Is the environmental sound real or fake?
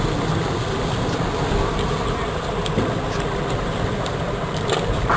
real